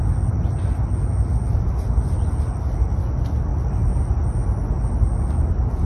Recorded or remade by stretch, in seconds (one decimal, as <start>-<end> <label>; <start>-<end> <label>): 0.0-5.9 recorded